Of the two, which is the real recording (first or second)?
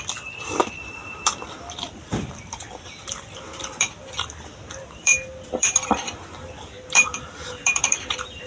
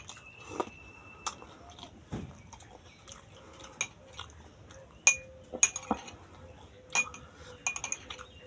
second